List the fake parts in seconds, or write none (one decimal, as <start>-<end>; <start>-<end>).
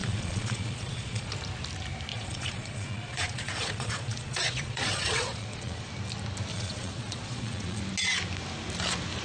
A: 0.0-1.3; 2.1-5.9; 6.5-7.8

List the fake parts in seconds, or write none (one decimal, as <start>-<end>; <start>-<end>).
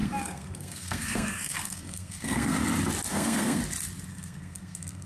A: 0.0-2.6; 3.1-3.6; 4.1-5.1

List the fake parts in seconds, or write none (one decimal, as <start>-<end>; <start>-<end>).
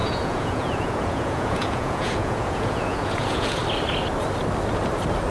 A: 0.0-3.6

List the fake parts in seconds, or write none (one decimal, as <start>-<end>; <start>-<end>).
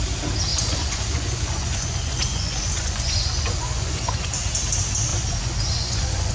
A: 0.5-4.3; 5.1-6.3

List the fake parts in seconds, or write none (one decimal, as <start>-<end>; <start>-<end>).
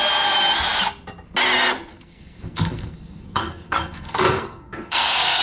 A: 1.9-5.4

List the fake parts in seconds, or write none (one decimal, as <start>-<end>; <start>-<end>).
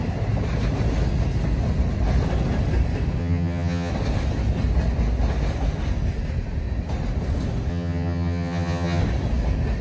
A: 3.2-3.9; 7.7-9.0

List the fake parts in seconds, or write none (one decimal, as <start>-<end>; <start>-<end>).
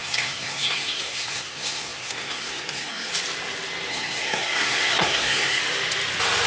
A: 0.0-3.1; 3.9-5.6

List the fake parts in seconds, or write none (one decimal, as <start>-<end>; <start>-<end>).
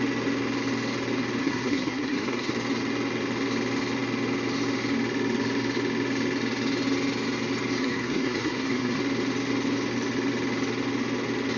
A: 1.4-2.5; 7.8-9.0